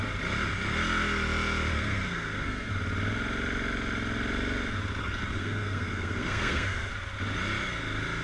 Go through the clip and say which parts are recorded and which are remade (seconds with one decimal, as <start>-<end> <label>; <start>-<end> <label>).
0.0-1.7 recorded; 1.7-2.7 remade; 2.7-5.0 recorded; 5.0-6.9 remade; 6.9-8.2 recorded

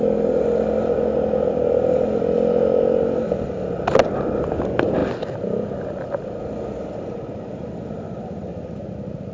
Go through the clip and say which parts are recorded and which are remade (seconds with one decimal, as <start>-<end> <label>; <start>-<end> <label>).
0.0-9.3 recorded

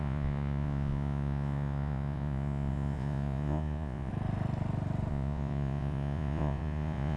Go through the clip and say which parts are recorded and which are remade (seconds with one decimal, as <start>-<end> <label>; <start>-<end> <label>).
0.0-4.1 remade; 4.1-5.1 recorded; 5.1-7.2 remade